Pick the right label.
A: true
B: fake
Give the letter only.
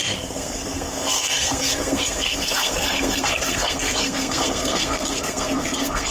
B